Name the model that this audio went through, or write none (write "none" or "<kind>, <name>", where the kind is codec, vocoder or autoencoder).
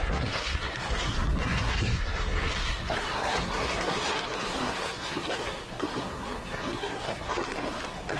codec, SNAC